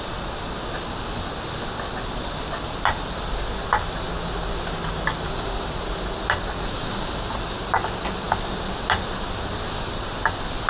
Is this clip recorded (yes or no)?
yes